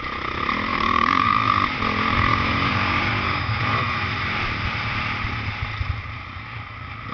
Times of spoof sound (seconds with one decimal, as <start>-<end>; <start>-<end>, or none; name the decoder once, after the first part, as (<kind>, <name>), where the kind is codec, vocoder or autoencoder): 0.7-1.5 (codec, DAC); 2.3-3.6